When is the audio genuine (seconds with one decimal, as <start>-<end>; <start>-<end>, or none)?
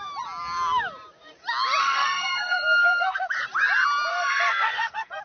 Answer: 0.0-1.8; 3.3-4.1